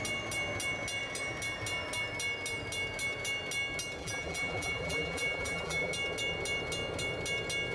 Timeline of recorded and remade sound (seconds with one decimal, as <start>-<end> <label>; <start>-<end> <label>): 0.0-4.0 recorded; 4.0-5.9 remade; 5.9-7.7 recorded